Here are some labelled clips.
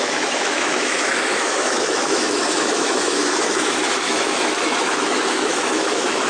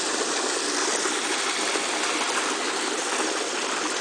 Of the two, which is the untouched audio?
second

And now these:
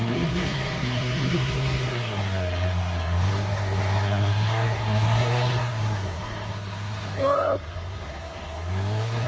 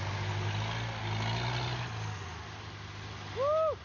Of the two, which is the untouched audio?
second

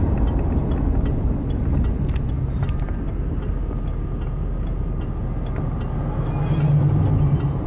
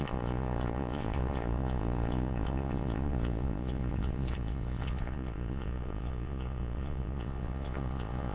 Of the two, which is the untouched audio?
first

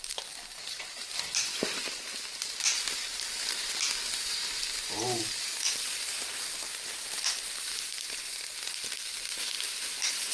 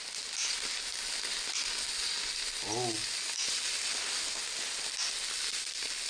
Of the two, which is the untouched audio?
second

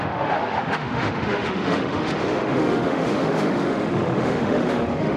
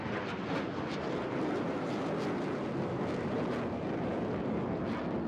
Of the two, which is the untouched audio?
second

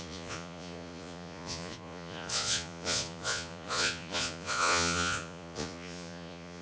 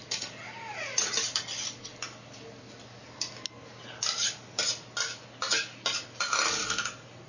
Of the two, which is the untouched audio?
second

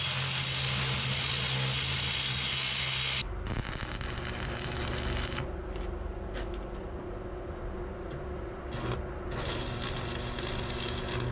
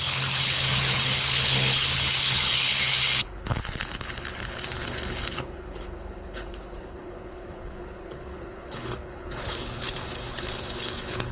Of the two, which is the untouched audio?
first